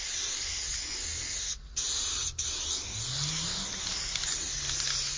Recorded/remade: recorded